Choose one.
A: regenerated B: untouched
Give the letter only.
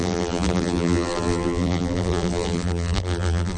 A